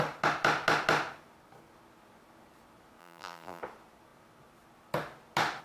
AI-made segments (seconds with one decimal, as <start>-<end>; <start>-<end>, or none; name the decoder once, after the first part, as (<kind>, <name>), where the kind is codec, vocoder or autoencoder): 3.0-3.6 (vocoder, BigVGAN v2)